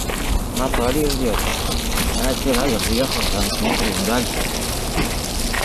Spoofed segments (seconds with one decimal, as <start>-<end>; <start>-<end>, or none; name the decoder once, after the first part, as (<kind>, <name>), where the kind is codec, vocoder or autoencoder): none